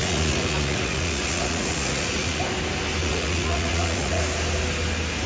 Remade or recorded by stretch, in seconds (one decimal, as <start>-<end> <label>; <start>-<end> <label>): 0.0-2.4 remade; 2.4-3.0 recorded; 3.0-4.2 remade; 4.2-5.3 recorded